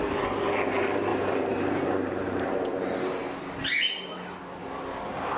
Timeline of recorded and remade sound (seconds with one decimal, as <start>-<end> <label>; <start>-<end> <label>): 0.0-1.1 recorded; 1.1-2.8 remade; 2.8-5.4 recorded